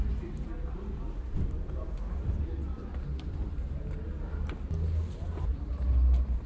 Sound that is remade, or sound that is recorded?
recorded